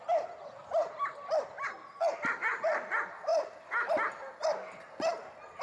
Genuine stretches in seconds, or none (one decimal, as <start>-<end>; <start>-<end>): 0.0-5.6